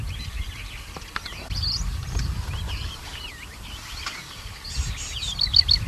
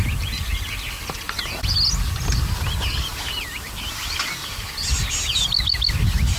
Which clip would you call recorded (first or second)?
second